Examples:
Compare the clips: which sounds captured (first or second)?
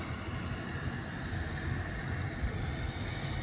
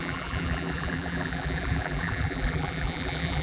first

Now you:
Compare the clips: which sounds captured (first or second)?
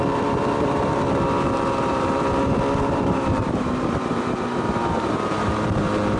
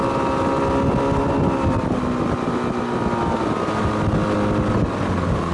second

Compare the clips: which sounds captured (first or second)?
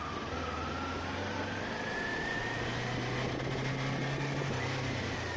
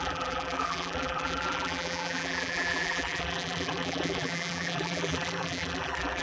first